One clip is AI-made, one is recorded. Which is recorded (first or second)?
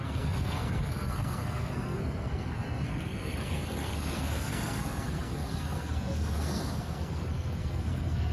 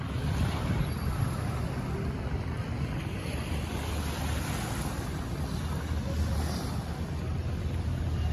second